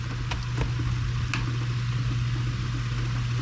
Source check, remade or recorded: recorded